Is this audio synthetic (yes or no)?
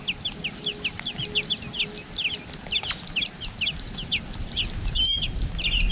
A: no